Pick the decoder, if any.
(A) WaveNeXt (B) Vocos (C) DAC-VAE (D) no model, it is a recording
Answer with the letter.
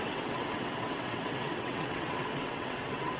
A